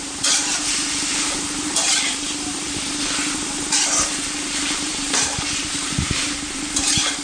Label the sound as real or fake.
fake